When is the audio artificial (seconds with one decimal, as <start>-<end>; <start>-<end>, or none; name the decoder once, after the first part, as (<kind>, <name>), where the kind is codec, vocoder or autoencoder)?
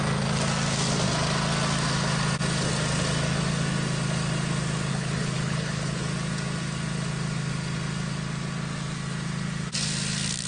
4.9-6.0 (codec, HILCodec)